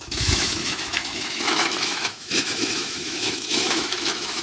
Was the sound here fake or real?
fake